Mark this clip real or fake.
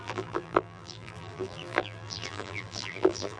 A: fake